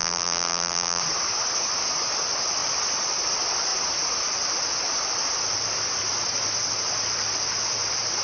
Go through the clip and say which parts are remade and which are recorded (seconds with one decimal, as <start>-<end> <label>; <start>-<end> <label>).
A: 0.0-1.0 remade; 1.0-8.2 recorded